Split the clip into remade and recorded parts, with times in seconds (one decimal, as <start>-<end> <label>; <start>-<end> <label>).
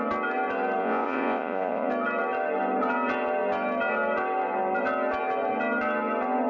0.0-0.8 recorded; 0.8-1.9 remade; 1.9-6.5 recorded